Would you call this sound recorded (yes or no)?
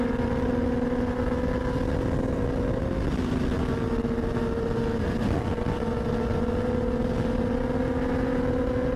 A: yes